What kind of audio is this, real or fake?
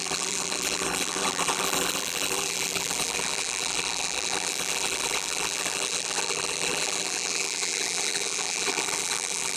fake